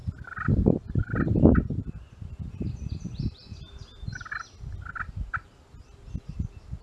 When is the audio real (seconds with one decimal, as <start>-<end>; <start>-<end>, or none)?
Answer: 0.0-6.8